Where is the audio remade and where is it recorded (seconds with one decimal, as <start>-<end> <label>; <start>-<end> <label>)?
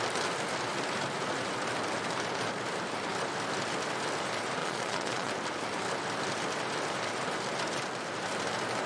0.0-4.6 recorded; 4.6-5.3 remade; 5.3-8.9 recorded